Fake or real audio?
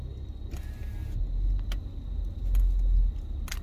real